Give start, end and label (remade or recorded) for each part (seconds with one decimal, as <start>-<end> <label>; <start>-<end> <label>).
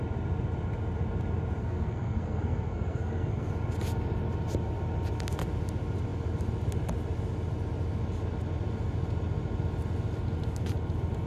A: 0.0-1.6 recorded; 1.6-3.5 remade; 3.5-11.3 recorded